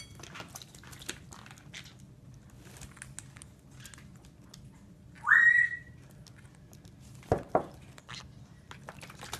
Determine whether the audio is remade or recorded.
recorded